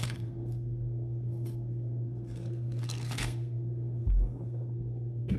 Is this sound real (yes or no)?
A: no